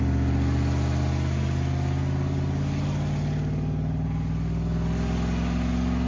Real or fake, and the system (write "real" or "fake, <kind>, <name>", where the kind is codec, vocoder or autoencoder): real